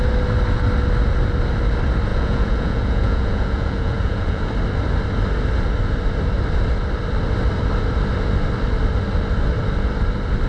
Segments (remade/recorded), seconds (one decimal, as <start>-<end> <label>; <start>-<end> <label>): 0.0-2.1 recorded; 2.1-4.5 remade; 4.5-10.5 recorded